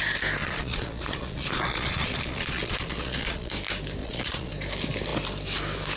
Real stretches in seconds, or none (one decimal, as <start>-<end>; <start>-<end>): 0.0-0.4; 3.5-4.0; 4.5-6.0